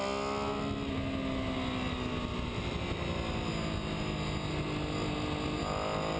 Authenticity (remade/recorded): recorded